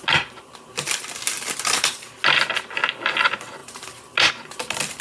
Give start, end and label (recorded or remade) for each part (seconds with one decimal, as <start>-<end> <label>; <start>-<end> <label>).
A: 0.0-5.0 recorded